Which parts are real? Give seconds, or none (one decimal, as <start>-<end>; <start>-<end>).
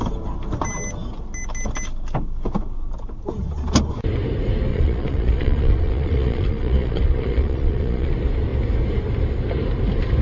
0.0-4.7; 8.1-10.2